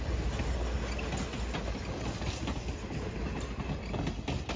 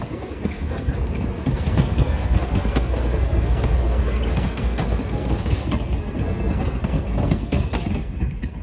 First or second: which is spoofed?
second